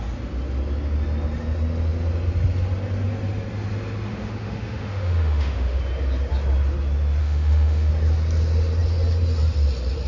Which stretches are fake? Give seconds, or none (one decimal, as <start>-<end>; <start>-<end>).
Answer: 4.1-5.8; 7.2-7.9